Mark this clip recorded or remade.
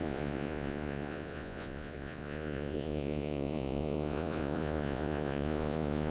remade